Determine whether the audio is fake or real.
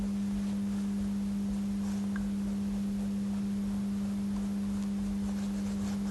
real